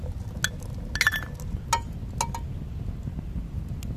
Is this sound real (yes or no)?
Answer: yes